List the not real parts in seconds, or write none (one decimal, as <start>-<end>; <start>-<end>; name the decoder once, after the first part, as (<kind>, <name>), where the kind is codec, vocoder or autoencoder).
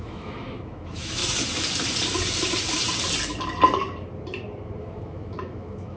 0.0-1.2 (autoencoder, DAC-VAE); 4.8-6.0